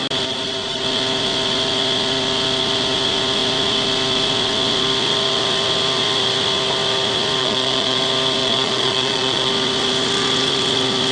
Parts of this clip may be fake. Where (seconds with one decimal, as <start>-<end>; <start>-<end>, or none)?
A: 7.4-8.0; 8.4-9.5